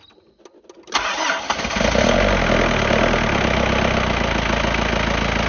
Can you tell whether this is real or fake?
real